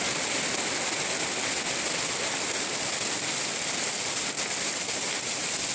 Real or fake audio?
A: real